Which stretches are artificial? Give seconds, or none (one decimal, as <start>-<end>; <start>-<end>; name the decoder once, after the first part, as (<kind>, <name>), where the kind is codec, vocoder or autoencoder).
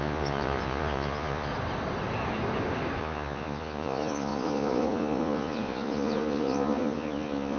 0.0-1.5 (vocoder, Vocos); 3.0-7.6